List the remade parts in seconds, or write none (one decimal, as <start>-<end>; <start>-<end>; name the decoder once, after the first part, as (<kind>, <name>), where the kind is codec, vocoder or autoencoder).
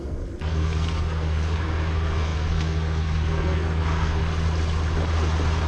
0.0-4.2 (codec, SNAC)